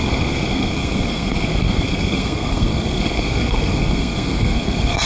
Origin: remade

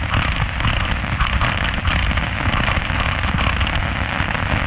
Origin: recorded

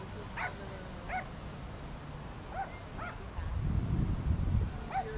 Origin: recorded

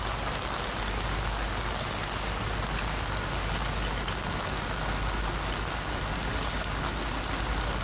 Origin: recorded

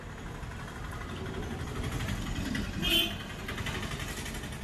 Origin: recorded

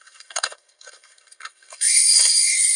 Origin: remade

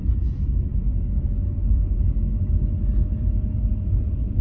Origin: recorded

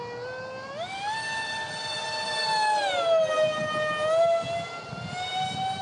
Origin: recorded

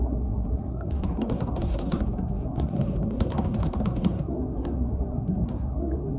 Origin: remade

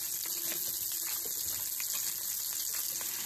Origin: recorded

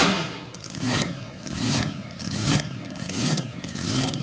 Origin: remade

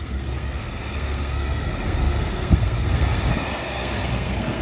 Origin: remade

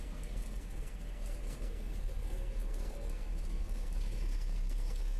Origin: remade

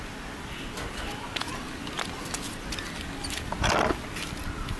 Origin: recorded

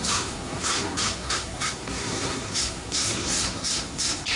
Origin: remade